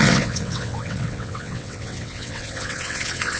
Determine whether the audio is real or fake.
fake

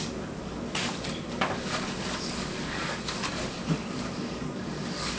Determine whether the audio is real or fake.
fake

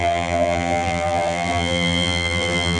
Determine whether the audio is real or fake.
fake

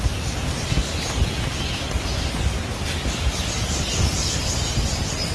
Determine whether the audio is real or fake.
real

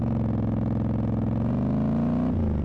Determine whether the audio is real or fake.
real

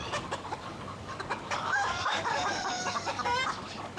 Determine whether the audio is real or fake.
fake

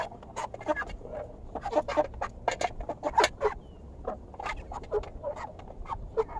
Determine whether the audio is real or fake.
real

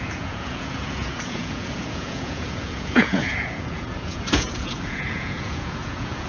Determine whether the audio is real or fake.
fake